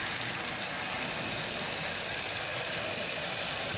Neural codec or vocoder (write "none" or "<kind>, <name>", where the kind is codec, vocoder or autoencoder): none